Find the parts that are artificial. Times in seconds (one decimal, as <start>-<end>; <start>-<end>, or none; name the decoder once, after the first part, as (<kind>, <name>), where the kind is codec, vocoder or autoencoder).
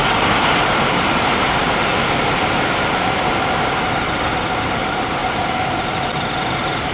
0.0-1.9 (vocoder, BigVGAN v2); 4.7-5.2